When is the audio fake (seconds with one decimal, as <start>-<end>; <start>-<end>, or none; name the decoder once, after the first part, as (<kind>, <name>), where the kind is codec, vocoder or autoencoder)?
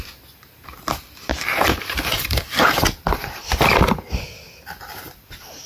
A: 1.5-3.4 (vocoder, BigVGAN v2)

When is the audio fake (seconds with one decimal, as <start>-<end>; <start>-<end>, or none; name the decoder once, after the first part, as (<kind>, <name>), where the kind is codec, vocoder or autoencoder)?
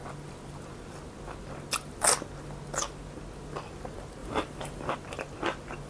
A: 4.2-4.9 (vocoder, BigVGAN v2)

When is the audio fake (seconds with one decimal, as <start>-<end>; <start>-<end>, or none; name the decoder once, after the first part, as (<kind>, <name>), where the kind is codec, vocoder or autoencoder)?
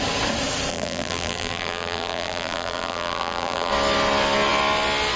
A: 0.7-3.7 (vocoder, BigVGAN v2)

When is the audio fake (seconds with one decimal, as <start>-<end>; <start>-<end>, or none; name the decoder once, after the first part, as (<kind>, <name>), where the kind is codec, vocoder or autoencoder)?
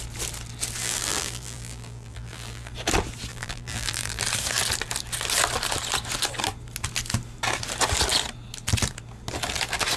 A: 0.8-2.7 (vocoder, BigVGAN v2); 3.3-4.2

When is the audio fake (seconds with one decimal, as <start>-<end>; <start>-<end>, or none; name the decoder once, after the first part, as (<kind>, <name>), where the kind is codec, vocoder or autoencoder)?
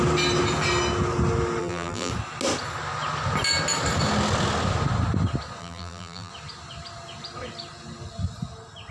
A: 1.6-2.1 (vocoder, BigVGAN v2); 5.6-6.3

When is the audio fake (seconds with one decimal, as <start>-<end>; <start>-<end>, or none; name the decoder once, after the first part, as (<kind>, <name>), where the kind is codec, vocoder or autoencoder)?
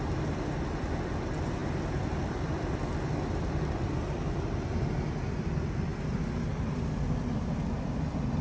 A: none